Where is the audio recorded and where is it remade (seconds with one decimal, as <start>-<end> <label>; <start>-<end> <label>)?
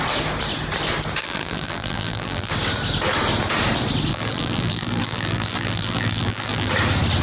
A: 0.0-1.2 recorded; 1.2-2.5 remade; 2.5-4.1 recorded; 4.1-6.7 remade; 6.7-7.2 recorded